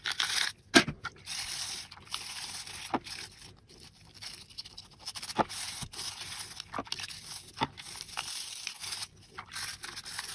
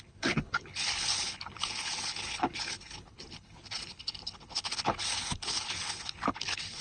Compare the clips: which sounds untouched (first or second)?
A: first